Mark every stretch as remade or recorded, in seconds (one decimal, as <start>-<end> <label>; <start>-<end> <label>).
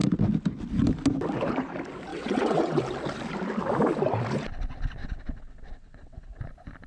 0.0-2.1 recorded; 2.1-2.8 remade; 2.8-5.0 recorded; 5.0-6.4 remade; 6.4-6.9 recorded